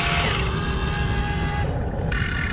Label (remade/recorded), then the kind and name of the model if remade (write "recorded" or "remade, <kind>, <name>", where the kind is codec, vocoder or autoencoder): recorded